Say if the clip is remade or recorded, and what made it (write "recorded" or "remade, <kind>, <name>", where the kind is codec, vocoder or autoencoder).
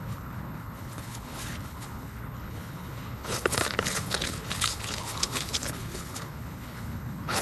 remade, codec, HILCodec